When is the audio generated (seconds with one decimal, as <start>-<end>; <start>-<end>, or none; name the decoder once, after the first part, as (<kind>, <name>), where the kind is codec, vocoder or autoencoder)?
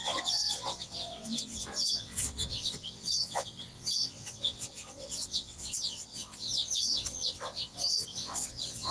0.0-8.9 (vocoder, WaveNeXt)